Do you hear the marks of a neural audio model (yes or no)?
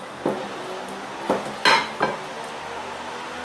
no